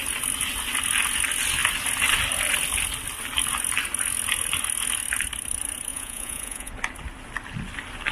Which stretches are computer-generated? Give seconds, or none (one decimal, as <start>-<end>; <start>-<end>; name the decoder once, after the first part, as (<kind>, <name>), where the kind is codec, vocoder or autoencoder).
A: 5.9-6.7 (vocoder, Vocos)